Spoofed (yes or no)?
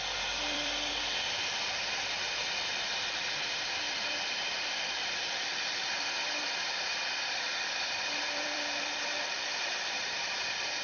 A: yes